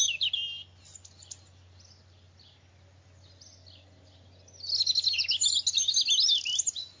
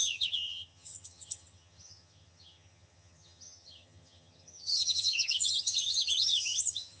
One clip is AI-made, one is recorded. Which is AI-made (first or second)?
second